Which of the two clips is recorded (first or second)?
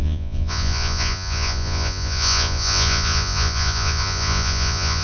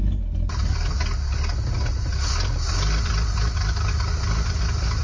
second